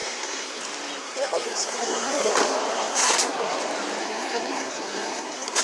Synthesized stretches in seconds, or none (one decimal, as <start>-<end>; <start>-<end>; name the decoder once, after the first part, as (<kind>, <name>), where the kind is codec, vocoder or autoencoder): 0.0-0.6 (codec, SNAC); 1.0-2.3; 2.7-3.6; 4.0-5.6